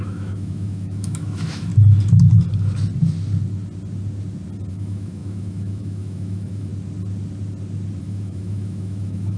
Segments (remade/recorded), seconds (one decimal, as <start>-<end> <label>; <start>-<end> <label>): 0.0-1.7 remade; 1.7-4.7 recorded; 4.7-6.7 remade; 6.7-8.0 recorded; 8.0-9.4 remade